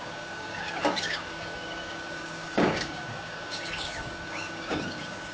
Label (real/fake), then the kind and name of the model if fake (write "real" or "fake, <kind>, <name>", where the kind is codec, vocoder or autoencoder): fake, codec, DAC